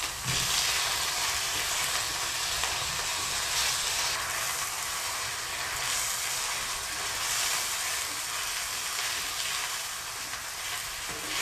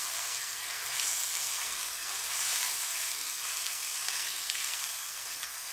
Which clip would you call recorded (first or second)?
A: first